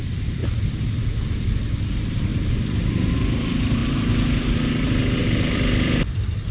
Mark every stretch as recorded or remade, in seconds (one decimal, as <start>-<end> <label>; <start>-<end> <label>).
0.0-0.4 remade; 0.4-1.2 recorded; 1.2-3.8 remade; 3.8-5.2 recorded; 5.2-6.5 remade